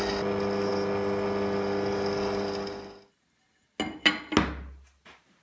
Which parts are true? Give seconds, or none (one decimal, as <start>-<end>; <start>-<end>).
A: 0.0-5.4